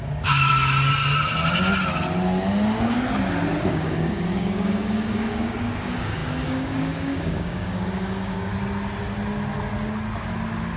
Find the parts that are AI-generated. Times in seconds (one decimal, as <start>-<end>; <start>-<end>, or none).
0.0-0.5; 3.7-8.5